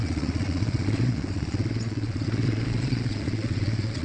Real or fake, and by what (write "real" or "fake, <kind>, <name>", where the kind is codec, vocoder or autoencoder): fake, vocoder, Vocos